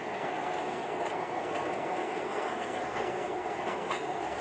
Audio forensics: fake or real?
fake